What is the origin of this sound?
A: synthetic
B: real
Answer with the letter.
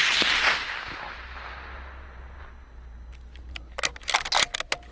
B